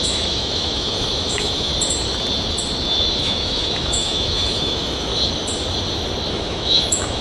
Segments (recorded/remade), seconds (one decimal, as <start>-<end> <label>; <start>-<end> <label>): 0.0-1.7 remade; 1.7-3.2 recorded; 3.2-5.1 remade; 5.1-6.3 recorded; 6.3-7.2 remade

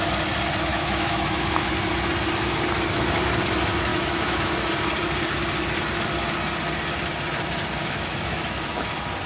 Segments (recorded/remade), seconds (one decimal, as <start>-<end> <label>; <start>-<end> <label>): 0.0-0.7 recorded; 0.7-1.7 remade; 1.7-3.9 recorded; 3.9-4.7 remade; 4.7-7.8 recorded; 7.8-8.9 remade; 8.9-9.3 recorded

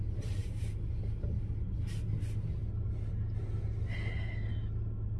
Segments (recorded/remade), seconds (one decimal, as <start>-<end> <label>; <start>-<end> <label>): 0.0-5.2 recorded

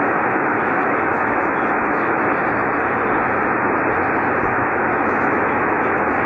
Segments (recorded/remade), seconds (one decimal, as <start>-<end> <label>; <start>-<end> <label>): 0.0-2.4 remade; 2.4-4.4 recorded; 4.4-6.3 remade

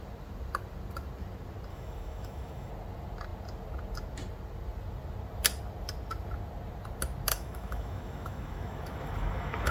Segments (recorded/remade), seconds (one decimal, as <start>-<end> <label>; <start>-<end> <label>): 0.0-1.7 recorded; 1.7-2.7 remade; 2.7-7.3 recorded; 7.3-9.7 remade

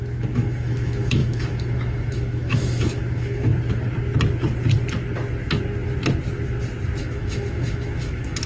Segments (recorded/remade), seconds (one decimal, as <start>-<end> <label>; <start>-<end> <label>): 0.0-3.5 remade; 3.5-7.0 recorded; 7.0-8.5 remade

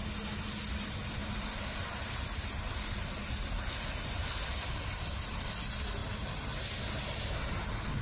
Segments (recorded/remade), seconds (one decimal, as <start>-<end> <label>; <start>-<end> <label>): 0.0-8.0 recorded